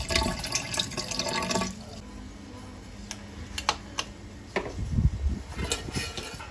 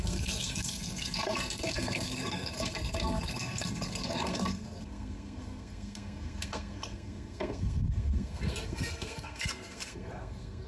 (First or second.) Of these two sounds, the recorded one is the first